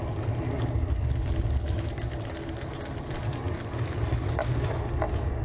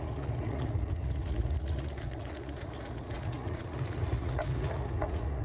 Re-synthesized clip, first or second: second